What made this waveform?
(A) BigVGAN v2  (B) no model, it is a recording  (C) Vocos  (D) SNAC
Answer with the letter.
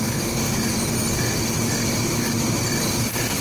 B